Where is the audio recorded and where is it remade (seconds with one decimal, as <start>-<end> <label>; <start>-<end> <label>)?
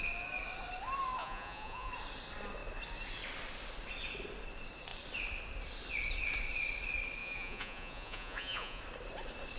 0.0-1.2 recorded; 1.2-1.9 remade; 1.9-7.2 recorded; 7.2-8.8 remade; 8.8-9.6 recorded